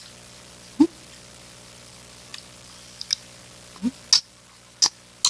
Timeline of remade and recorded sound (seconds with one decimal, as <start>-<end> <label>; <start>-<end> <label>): 0.0-5.3 recorded